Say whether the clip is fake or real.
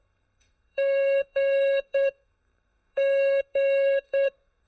fake